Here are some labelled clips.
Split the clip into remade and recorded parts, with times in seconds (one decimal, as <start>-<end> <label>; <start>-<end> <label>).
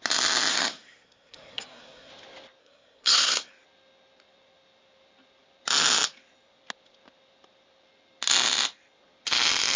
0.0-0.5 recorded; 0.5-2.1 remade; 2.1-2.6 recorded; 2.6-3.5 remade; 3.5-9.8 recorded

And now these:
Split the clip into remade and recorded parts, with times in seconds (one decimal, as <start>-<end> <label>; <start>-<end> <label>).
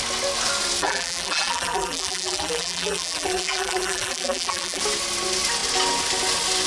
0.0-0.8 recorded; 0.8-4.8 remade; 4.8-6.7 recorded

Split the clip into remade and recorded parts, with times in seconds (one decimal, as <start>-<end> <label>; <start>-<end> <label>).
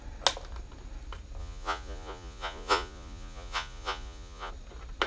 0.0-1.4 recorded; 1.4-4.5 remade; 4.5-5.1 recorded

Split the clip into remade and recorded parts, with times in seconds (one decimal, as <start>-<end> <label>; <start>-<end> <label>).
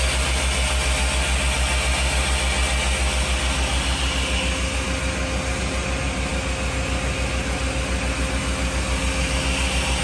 0.0-10.0 recorded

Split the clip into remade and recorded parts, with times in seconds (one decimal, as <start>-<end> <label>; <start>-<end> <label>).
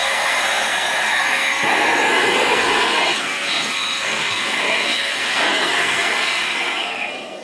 0.0-7.4 remade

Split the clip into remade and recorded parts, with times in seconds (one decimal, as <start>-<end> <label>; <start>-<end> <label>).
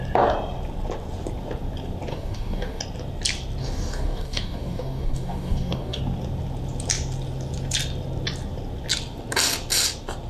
0.0-2.1 recorded; 2.1-2.8 remade; 2.8-3.6 recorded; 3.6-6.0 remade; 6.0-10.3 recorded